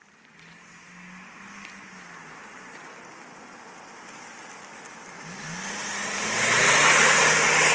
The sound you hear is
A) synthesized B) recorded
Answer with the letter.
B